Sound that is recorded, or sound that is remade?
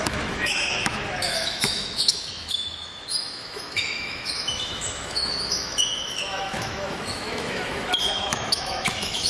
remade